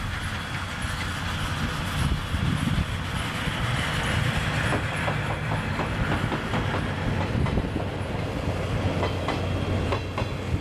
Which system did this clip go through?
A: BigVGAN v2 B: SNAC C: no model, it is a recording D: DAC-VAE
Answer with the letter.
C